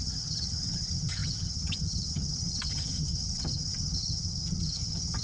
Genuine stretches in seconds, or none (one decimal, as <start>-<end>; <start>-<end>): none